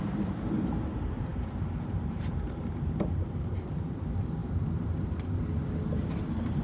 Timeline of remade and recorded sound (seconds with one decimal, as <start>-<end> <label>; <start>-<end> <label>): 0.0-4.4 remade; 4.4-6.6 recorded